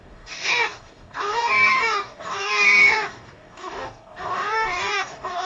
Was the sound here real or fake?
fake